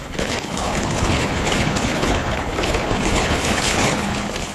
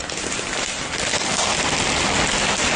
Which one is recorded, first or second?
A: second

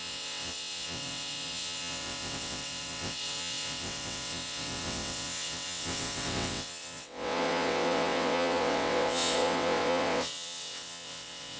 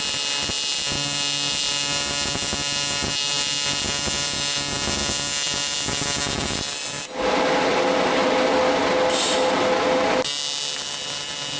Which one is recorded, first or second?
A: second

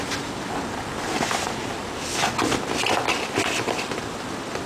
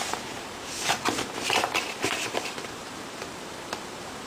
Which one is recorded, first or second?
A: first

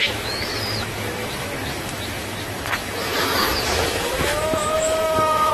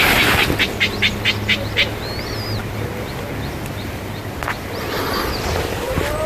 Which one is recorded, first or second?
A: second